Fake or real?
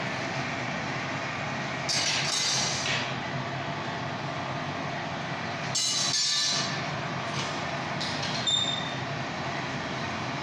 real